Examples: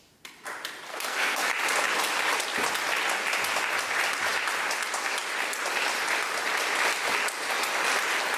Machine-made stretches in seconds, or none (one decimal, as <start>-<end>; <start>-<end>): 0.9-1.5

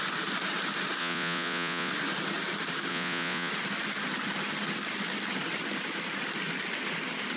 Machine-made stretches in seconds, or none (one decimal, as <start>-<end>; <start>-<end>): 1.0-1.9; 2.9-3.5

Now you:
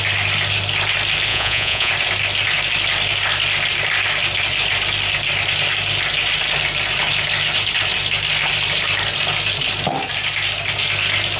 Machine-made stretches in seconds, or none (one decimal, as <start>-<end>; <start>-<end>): 1.3-1.9

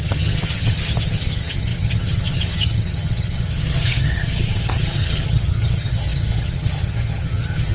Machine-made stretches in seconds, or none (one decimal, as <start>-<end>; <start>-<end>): 0.0-7.7

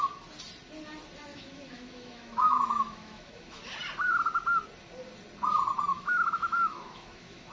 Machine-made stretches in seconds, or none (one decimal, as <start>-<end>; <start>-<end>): 1.3-3.6; 5.9-7.5